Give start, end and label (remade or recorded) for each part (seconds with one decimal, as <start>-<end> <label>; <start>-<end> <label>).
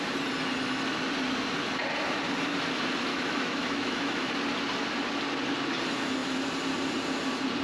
0.0-3.1 recorded; 3.1-4.3 remade; 4.3-7.6 recorded